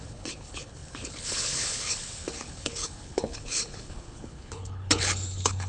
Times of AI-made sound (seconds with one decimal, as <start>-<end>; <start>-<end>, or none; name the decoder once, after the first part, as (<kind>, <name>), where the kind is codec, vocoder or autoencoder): 0.0-5.7 (codec, HILCodec)